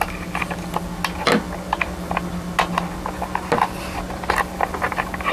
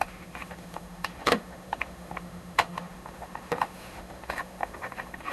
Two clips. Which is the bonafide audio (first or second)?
first